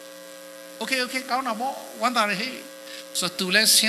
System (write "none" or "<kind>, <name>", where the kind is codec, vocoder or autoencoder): codec, DAC